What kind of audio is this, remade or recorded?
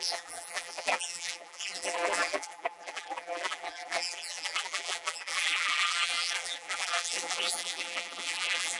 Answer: remade